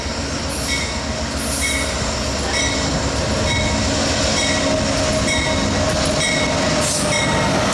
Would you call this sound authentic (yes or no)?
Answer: yes